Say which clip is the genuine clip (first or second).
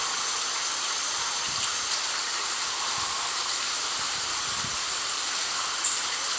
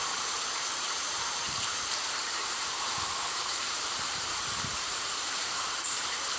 first